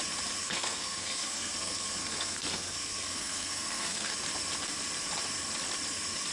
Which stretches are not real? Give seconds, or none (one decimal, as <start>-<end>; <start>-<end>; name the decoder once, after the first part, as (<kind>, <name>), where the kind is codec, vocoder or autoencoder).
0.4-4.1 (codec, SNAC)